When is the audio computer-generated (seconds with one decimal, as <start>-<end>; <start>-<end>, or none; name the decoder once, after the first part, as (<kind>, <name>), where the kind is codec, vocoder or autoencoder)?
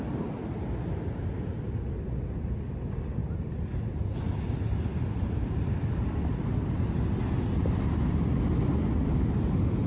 none